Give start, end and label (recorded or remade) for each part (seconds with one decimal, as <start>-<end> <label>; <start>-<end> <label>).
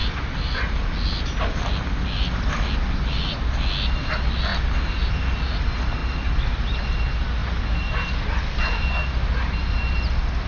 0.0-10.5 recorded